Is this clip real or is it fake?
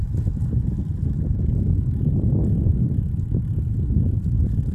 real